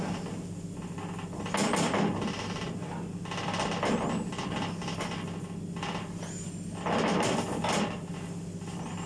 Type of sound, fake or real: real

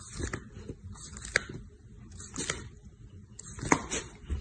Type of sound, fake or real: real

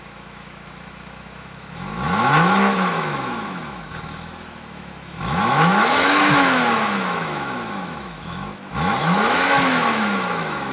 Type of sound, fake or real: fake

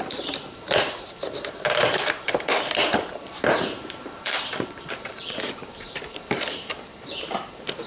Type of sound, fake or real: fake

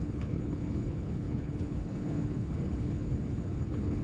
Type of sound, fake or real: fake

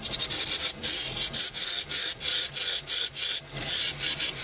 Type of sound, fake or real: real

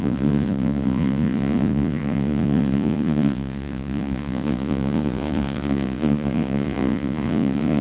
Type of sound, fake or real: fake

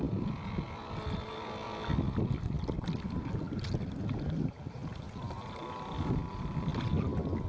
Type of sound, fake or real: real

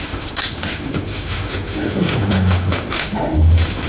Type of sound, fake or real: fake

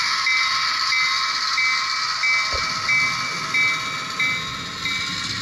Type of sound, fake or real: real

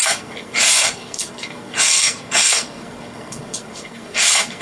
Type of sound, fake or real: fake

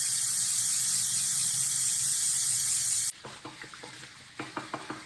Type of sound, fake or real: real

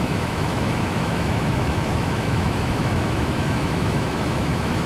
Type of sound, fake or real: fake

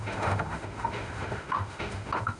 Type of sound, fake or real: fake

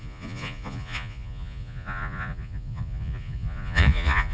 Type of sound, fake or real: fake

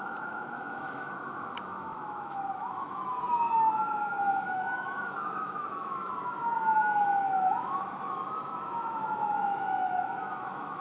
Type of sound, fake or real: fake